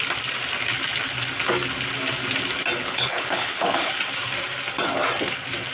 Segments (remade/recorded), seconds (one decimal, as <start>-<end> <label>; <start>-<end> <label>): 0.0-2.8 recorded; 2.8-3.9 remade; 3.9-5.7 recorded

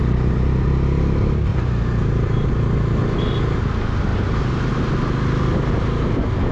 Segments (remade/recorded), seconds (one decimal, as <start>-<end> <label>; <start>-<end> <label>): 0.0-1.5 recorded; 1.5-2.5 remade; 2.5-4.1 recorded; 4.1-4.8 remade; 4.8-6.5 recorded

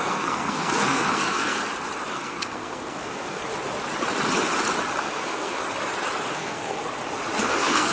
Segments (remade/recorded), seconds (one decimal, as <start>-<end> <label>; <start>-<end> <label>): 0.0-1.6 remade; 1.6-2.1 recorded; 2.1-3.4 remade; 3.4-5.0 recorded; 5.0-5.6 remade; 5.6-6.3 recorded; 6.3-6.8 remade; 6.8-7.4 recorded; 7.4-7.9 remade

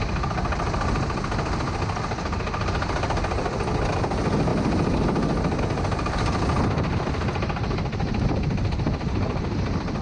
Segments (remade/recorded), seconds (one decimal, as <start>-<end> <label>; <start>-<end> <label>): 0.0-10.0 recorded